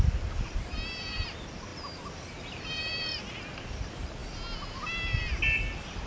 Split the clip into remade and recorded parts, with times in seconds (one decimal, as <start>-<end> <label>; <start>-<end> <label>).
0.0-6.1 recorded